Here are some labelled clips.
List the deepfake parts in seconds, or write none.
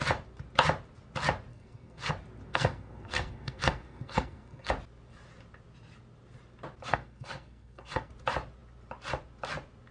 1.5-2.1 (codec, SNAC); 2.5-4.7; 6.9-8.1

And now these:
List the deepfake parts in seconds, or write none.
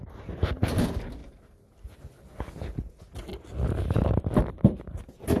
0.0-1.2 (vocoder, BigVGAN v2); 4.4-5.4